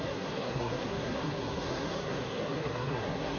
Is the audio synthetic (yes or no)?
yes